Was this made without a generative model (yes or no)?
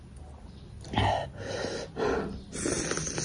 yes